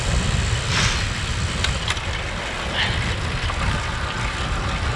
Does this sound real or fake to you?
real